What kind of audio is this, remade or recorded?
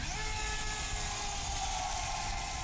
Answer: recorded